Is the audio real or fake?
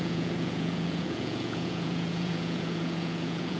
fake